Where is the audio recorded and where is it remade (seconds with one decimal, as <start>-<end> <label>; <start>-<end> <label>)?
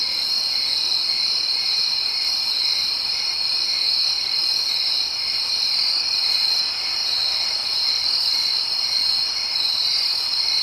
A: 0.0-10.6 recorded